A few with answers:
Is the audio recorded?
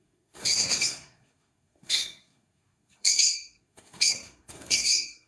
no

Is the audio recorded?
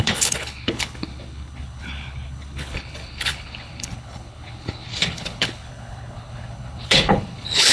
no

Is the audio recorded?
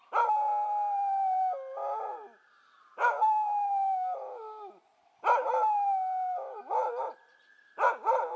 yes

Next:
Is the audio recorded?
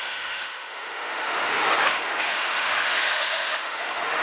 no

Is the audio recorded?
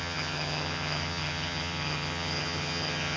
no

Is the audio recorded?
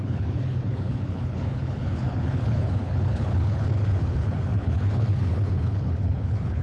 no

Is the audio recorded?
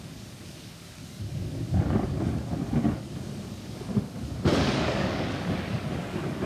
no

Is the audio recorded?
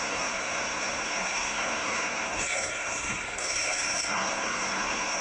no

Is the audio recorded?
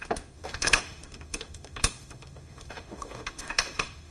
no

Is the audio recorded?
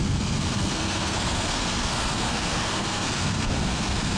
no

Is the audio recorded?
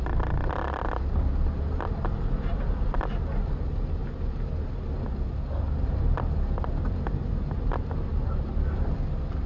yes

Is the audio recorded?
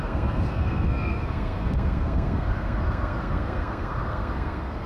no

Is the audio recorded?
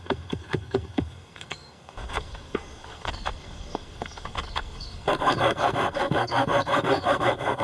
no